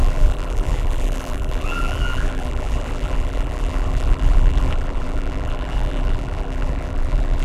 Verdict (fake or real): fake